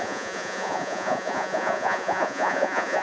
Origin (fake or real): fake